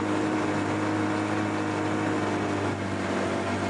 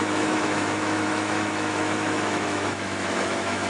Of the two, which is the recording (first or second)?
first